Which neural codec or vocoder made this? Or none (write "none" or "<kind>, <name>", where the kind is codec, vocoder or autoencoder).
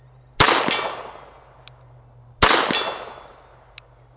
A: none